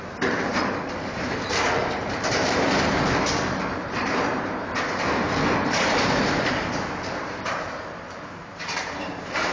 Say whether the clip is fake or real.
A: fake